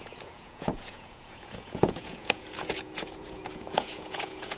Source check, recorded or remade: remade